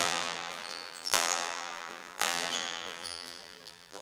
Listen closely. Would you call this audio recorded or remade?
remade